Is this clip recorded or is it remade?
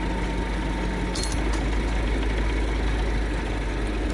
recorded